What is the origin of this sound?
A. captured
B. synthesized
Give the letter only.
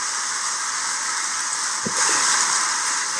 A